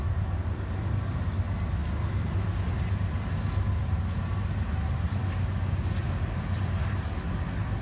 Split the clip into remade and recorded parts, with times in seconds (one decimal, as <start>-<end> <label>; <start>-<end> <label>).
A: 0.0-7.8 recorded